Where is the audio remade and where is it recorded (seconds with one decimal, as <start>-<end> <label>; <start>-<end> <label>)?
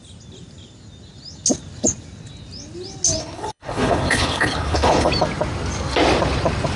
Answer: 0.0-3.2 recorded; 3.2-5.1 remade; 5.1-6.8 recorded